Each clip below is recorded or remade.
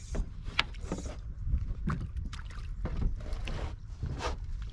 remade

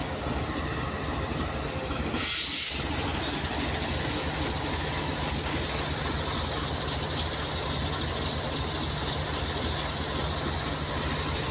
recorded